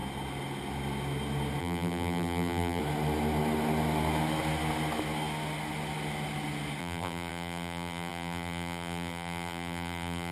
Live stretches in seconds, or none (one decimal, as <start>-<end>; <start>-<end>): 0.0-1.6; 2.8-6.8